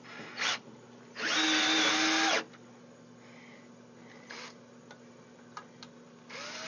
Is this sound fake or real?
real